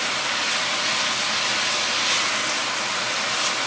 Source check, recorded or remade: recorded